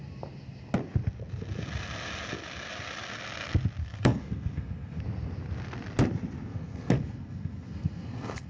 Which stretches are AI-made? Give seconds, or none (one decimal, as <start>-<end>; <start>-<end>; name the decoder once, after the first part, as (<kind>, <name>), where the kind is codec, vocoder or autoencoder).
3.8-5.0 (codec, SNAC); 6.5-8.5